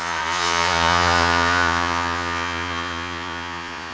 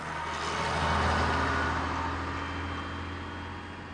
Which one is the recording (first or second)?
second